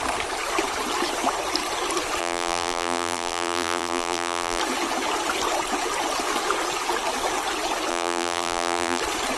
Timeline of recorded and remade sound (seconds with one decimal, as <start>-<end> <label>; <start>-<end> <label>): 0.0-2.2 recorded; 2.2-4.6 remade; 4.6-7.9 recorded; 7.9-9.0 remade; 9.0-9.4 recorded